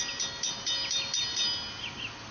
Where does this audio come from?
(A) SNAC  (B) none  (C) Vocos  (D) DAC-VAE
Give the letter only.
B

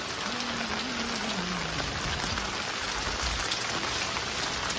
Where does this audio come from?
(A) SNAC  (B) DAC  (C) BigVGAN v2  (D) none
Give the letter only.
D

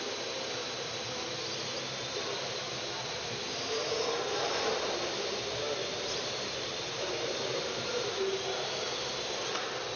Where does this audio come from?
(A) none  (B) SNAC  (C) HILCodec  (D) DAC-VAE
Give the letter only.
A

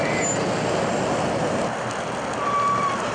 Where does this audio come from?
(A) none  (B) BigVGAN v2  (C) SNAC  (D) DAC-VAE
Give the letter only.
A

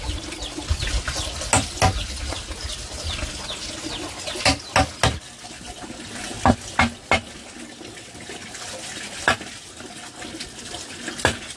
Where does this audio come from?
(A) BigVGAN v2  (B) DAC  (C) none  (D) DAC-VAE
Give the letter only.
C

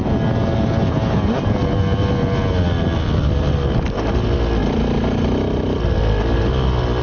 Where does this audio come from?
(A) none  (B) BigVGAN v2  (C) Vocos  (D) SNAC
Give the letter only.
A